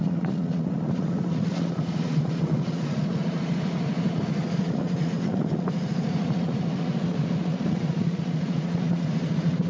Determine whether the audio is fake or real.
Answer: fake